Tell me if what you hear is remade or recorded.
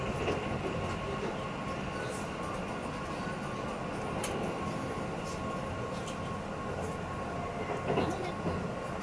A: recorded